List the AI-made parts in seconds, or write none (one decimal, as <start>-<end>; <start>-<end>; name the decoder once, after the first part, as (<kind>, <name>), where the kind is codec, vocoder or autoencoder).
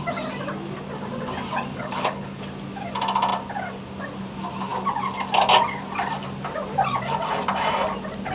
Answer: 1.7-2.4 (codec, HILCodec)